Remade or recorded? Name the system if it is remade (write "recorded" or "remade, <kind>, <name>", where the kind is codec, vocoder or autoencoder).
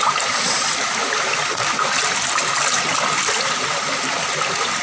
recorded